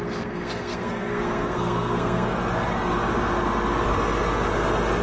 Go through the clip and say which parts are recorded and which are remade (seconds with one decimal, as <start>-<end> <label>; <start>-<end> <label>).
0.0-2.3 remade; 2.3-5.0 recorded